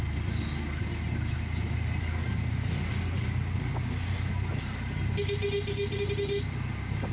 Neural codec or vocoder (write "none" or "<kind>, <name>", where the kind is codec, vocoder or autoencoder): none